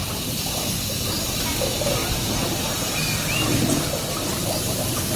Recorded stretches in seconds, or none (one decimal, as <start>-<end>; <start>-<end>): 0.0-2.0; 2.5-5.2